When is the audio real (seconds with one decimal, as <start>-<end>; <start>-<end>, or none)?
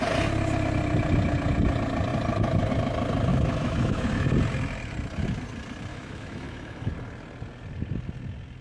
0.0-3.3; 4.3-5.9; 6.9-8.6